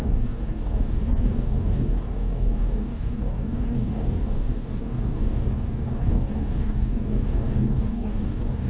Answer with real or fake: fake